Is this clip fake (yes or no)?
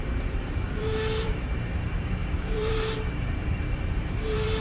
yes